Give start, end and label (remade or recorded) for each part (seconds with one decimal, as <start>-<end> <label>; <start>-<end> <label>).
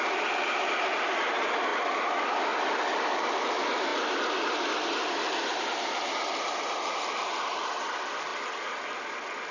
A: 0.0-1.7 recorded; 1.7-3.4 remade; 3.4-9.5 recorded